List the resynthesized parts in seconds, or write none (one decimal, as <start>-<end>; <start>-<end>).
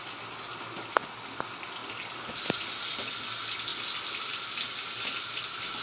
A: 1.8-3.2; 3.7-4.2